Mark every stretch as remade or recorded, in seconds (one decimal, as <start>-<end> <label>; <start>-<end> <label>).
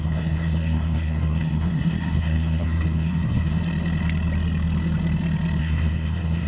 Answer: 0.0-3.6 remade; 3.6-5.6 recorded; 5.6-6.5 remade